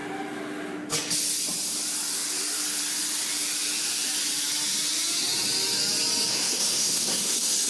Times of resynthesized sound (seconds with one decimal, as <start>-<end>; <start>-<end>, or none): 6.3-7.7